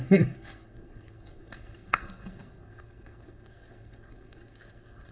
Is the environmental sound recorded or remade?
remade